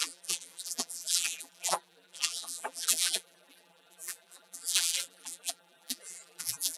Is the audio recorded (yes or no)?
no